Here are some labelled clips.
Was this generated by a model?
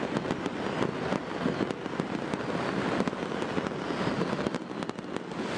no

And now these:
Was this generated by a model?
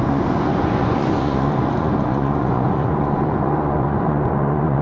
yes